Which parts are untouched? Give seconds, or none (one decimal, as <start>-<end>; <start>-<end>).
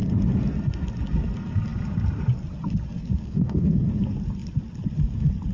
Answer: 0.0-3.2; 3.8-5.5